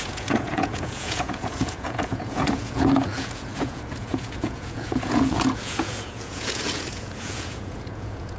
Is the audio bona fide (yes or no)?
no